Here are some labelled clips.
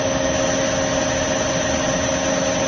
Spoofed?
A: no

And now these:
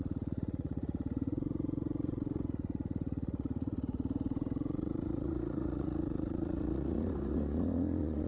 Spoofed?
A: yes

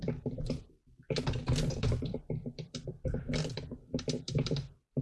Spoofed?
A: yes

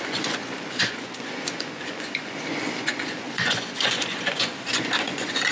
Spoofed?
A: yes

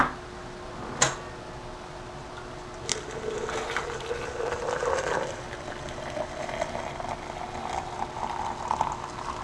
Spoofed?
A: no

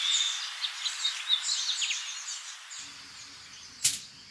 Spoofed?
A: no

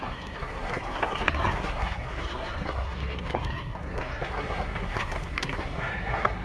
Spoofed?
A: yes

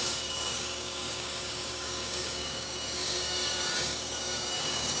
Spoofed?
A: yes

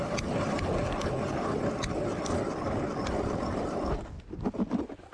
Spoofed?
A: no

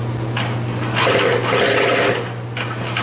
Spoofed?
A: no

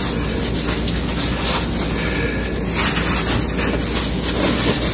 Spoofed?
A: no